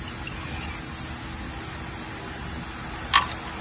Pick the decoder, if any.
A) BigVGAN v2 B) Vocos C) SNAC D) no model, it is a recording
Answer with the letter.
D